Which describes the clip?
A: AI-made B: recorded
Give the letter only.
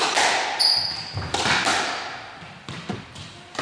B